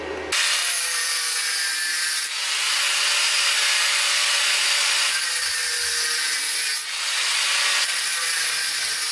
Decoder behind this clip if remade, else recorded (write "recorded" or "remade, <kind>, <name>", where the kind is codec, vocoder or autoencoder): recorded